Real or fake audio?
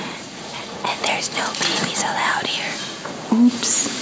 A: fake